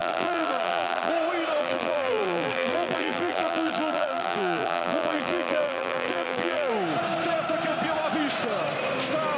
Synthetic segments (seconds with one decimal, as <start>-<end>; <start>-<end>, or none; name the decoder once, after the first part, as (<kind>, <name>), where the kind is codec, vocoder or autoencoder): 0.0-1.1 (vocoder, BigVGAN v2); 1.6-6.7